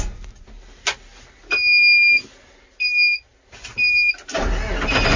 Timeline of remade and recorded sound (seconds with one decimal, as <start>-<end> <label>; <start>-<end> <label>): 0.0-5.2 recorded